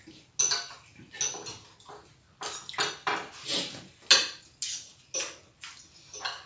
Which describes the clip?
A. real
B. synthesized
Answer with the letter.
A